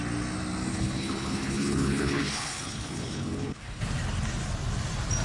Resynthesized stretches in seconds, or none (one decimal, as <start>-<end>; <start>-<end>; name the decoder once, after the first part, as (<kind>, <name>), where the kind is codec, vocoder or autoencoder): 0.7-3.8 (codec, HILCodec)